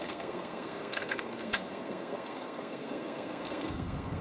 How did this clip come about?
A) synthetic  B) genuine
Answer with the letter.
A